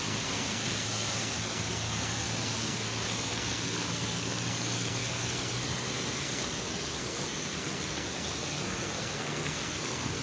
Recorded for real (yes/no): no